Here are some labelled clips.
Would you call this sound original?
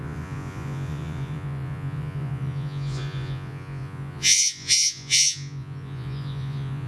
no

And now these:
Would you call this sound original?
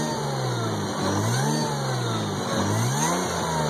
yes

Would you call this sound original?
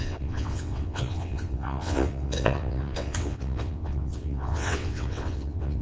no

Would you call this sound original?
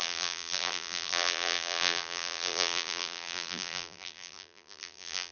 no